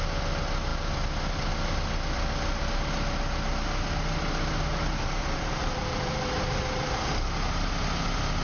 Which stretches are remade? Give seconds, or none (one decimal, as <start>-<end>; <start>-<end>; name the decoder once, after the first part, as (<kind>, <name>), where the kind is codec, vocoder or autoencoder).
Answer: 4.7-7.1 (vocoder, BigVGAN v2)